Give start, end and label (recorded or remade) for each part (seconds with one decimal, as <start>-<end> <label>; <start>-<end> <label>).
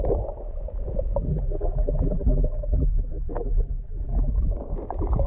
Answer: 0.0-1.3 recorded; 1.3-4.3 remade; 4.3-5.3 recorded